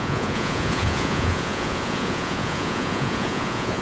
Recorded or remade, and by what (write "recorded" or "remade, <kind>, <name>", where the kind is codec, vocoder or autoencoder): remade, vocoder, Vocos